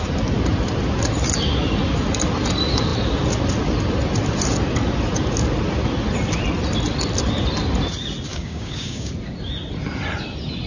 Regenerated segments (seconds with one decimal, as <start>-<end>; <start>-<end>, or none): 8.3-9.1